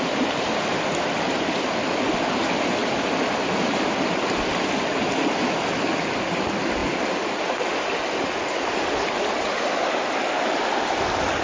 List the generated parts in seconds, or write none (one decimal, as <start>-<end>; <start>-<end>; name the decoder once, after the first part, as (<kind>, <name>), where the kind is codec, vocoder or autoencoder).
none